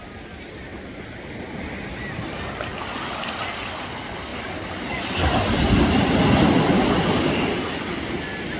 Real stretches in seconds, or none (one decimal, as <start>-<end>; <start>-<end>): 0.0-8.6